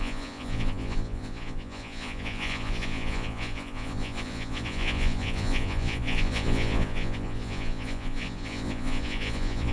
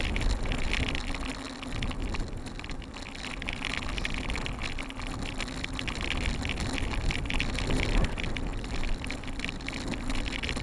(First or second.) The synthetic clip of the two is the first